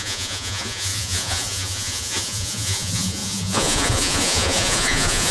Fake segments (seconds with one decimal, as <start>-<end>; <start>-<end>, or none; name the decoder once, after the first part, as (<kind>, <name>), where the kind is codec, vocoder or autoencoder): 0.0-5.3 (vocoder, Vocos)